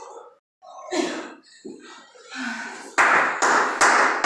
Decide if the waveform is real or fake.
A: real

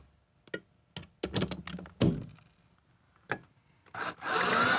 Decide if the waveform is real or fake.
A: real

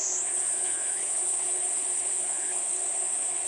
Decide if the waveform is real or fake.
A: fake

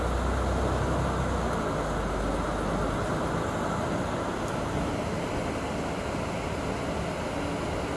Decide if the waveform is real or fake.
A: real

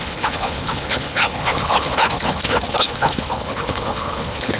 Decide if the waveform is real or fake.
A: fake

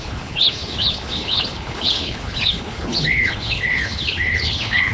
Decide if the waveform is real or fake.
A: fake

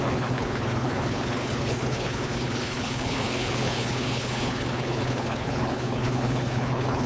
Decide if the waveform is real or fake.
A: fake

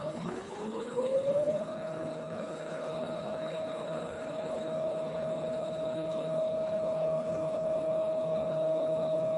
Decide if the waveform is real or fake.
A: fake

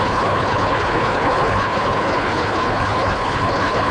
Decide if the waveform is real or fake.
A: fake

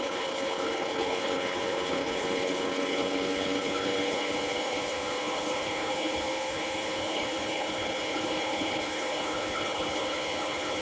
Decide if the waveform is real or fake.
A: fake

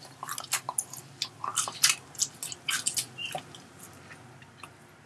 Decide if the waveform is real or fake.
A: real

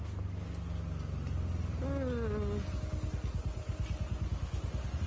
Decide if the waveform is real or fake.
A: real